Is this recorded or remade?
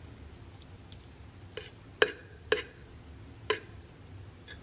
recorded